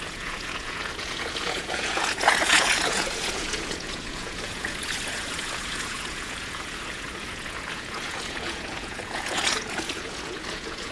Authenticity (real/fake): fake